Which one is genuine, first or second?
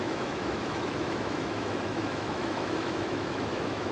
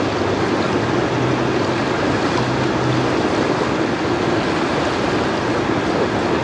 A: second